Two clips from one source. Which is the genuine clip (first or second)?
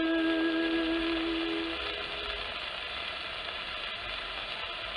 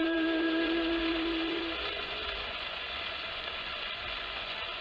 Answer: first